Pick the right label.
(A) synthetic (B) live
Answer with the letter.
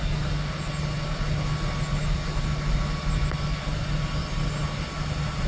B